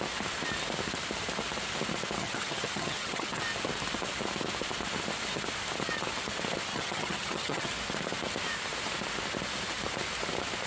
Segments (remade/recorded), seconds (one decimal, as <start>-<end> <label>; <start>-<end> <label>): 0.0-2.2 recorded; 2.2-3.4 remade; 3.4-6.7 recorded; 6.7-7.7 remade; 7.7-10.7 recorded